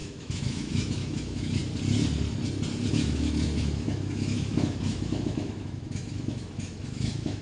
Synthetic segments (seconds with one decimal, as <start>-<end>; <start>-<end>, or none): 0.0-1.6; 2.9-7.4